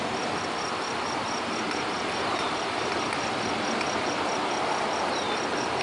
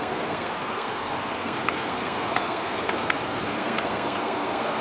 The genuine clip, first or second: first